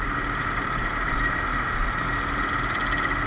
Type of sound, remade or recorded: recorded